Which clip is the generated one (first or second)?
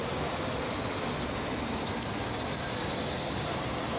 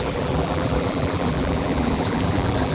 second